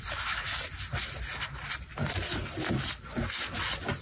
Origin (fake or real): real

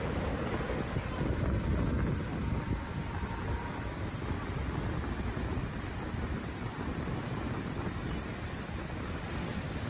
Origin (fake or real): real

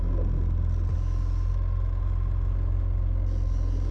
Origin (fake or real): real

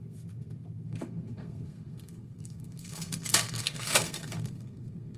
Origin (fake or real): fake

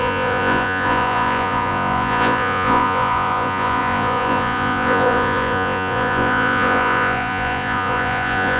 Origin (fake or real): fake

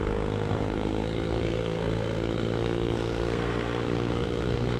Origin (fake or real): fake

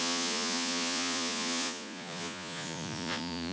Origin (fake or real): fake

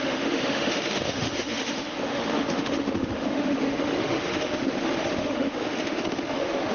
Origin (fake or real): fake